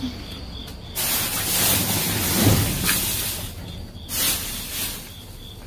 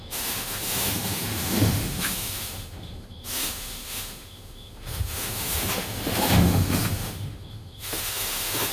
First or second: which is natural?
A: first